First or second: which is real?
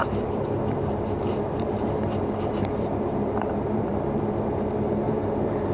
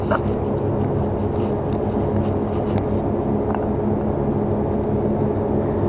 second